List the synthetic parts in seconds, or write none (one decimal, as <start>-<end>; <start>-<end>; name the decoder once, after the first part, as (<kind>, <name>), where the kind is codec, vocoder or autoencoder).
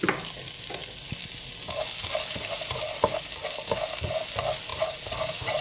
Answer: 4.7-5.6 (vocoder, BigVGAN v2)